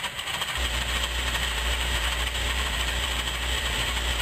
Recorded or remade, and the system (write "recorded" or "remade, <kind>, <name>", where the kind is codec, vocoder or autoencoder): remade, vocoder, BigVGAN v2